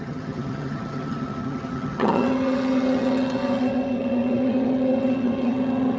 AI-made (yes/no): yes